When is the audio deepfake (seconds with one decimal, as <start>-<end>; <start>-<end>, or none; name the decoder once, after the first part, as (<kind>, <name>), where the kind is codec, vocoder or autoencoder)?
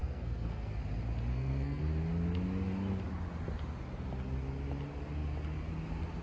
0.0-0.8 (codec, SNAC); 1.3-1.8